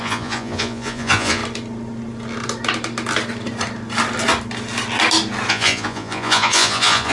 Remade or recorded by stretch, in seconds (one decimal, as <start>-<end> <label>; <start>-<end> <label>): 0.0-1.4 remade; 1.4-5.5 recorded; 5.5-7.1 remade